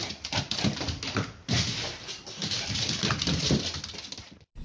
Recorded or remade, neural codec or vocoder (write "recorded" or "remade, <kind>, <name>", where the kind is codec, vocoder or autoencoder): remade, vocoder, BigVGAN v2